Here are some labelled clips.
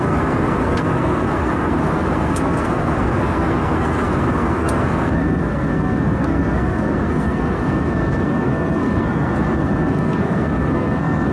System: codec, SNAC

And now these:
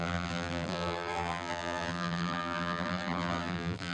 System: vocoder, BigVGAN v2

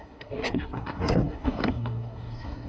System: codec, SNAC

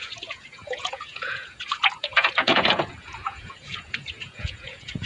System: vocoder, Vocos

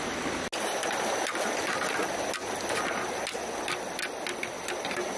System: none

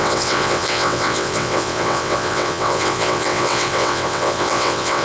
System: vocoder, WaveNeXt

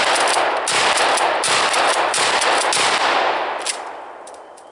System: none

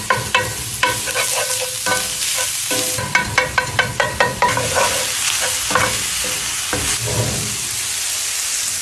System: none